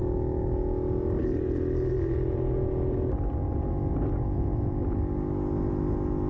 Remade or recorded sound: recorded